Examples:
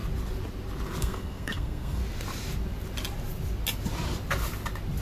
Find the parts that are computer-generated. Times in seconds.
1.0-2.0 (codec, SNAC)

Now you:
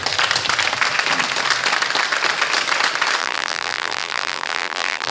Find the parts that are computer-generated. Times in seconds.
3.2-5.1 (vocoder, BigVGAN v2)

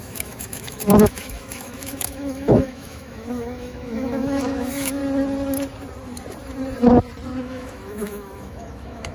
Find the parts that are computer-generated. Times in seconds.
0.0-5.0 (autoencoder, DAC-VAE); 7.4-9.1

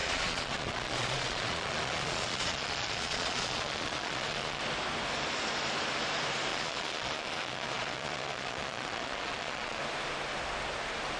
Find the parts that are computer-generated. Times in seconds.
0.0-4.6 (vocoder, Vocos); 6.5-9.8

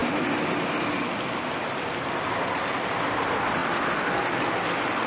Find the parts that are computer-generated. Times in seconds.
none